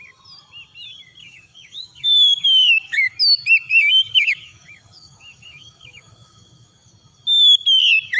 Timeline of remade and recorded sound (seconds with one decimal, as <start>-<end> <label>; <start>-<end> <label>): 0.0-1.2 recorded; 1.2-3.1 remade; 3.1-3.7 recorded; 3.7-6.9 remade; 6.9-8.2 recorded